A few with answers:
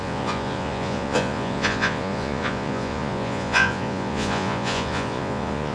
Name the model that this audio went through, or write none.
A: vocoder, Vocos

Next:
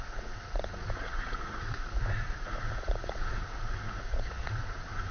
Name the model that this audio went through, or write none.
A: vocoder, Vocos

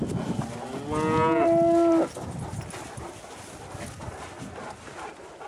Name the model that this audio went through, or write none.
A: none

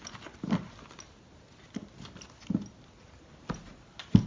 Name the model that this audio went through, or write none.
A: none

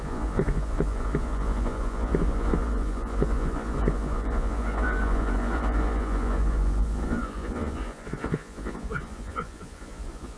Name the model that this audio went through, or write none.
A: vocoder, Vocos